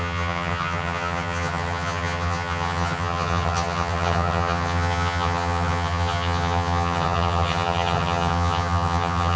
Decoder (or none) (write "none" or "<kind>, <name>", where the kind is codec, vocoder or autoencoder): vocoder, HiFi-GAN